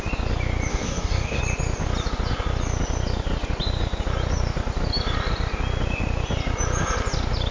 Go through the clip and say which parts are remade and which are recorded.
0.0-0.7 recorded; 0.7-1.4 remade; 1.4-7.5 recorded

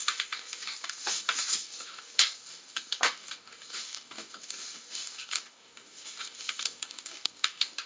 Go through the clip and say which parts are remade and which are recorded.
0.0-7.9 remade

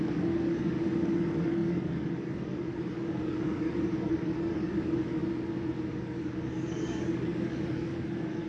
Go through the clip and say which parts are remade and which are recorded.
0.0-5.2 remade; 5.2-5.9 recorded; 5.9-8.5 remade

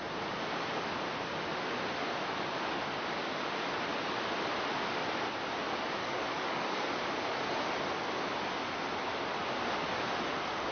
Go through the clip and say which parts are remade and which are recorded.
0.0-6.0 recorded; 6.0-6.9 remade; 6.9-10.7 recorded

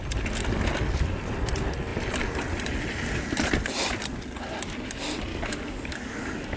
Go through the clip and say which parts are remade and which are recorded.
0.0-5.3 recorded; 5.3-6.6 remade

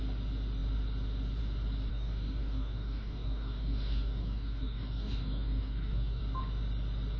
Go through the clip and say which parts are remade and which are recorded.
0.0-1.9 recorded; 1.9-6.2 remade; 6.2-7.2 recorded

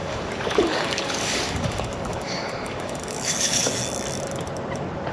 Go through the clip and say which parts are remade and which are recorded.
0.0-3.8 remade; 3.8-5.1 recorded